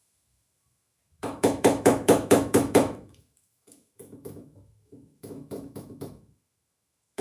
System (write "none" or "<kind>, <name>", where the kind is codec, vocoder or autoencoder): autoencoder, DAC-VAE